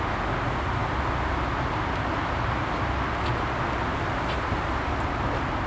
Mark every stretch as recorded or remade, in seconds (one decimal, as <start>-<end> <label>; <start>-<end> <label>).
0.0-5.7 recorded